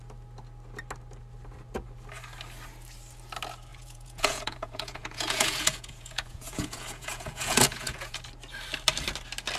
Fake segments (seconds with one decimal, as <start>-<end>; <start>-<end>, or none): 3.7-8.2